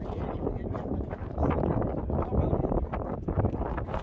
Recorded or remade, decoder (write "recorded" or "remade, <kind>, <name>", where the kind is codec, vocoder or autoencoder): recorded